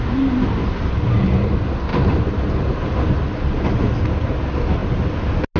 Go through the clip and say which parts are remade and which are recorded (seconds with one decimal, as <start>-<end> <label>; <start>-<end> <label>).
0.0-5.6 recorded